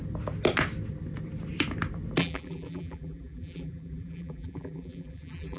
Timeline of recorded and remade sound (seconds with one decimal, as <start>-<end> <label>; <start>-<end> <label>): 0.0-2.2 recorded; 2.2-5.6 remade